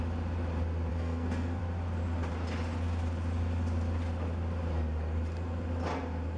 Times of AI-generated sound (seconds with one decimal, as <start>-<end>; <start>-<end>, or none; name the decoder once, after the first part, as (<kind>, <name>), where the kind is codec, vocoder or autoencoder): 0.9-1.6 (codec, SNAC)